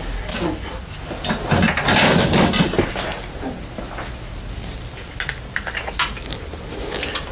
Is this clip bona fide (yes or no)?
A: yes